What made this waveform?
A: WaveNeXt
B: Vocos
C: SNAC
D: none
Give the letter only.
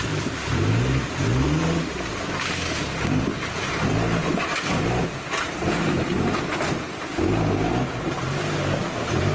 D